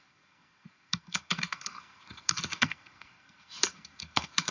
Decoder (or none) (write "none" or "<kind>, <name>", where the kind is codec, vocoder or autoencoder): codec, SNAC